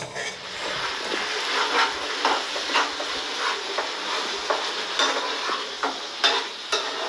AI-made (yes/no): no